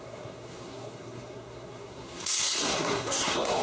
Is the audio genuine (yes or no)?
no